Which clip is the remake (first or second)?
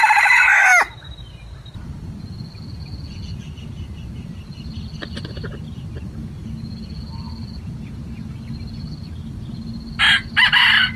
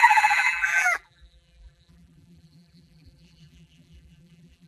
second